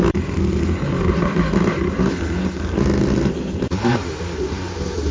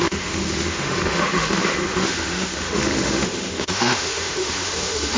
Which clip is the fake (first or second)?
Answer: second